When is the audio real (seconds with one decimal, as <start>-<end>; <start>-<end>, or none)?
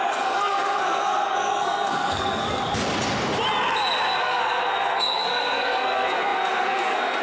2.6-4.2